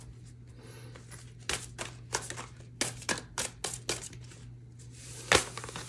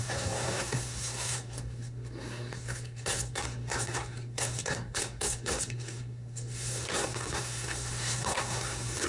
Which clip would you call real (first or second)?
first